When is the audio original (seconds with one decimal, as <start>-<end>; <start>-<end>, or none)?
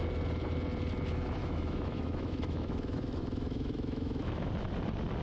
0.0-1.4; 4.5-5.2